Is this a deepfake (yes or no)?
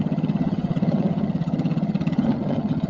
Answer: yes